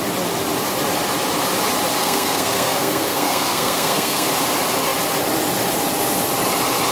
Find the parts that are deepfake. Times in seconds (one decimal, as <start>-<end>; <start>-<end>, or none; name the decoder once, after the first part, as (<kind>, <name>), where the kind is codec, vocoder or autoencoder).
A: 2.0-4.3 (codec, SNAC)